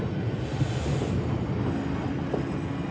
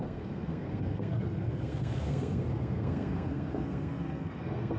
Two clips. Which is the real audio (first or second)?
first